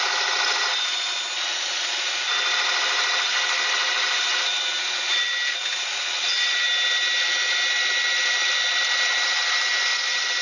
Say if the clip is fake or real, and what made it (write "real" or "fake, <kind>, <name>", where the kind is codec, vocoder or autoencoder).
real